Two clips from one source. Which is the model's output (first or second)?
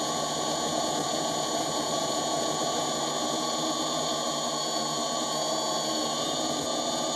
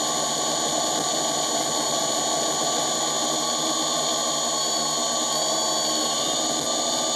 first